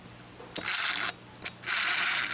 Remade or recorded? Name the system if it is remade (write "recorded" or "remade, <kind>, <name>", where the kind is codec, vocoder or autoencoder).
recorded